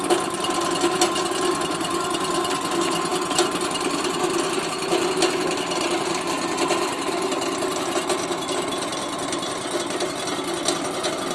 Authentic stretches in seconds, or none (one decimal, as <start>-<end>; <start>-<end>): 0.0-5.4; 7.0-11.3